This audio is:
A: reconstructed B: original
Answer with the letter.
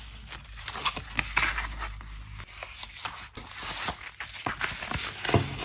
B